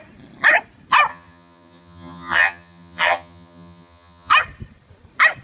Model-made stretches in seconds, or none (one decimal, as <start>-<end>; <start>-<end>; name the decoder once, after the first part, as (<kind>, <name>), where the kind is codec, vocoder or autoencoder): 1.1-4.3 (vocoder, HiFi-GAN)